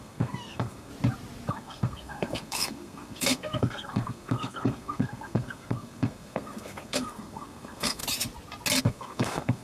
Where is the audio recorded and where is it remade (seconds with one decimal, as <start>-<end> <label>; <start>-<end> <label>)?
0.0-0.9 remade; 0.9-1.5 recorded; 1.5-8.0 remade; 8.0-8.8 recorded; 8.8-9.6 remade